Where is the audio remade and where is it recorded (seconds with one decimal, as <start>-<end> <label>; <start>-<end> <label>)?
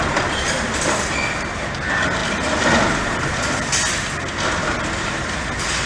0.0-5.9 recorded